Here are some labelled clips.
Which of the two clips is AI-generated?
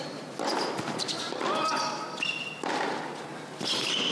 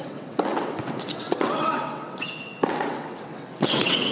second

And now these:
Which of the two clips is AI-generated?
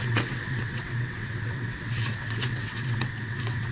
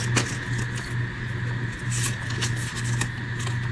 first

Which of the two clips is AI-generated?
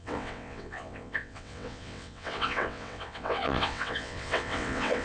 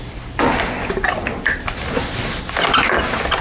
first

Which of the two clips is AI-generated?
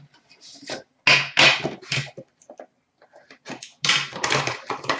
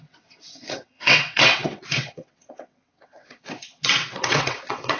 second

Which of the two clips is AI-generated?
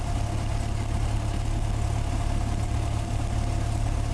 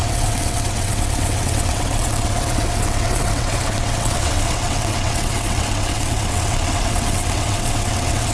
second